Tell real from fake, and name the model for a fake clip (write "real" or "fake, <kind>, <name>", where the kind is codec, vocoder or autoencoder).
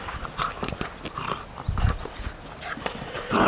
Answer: real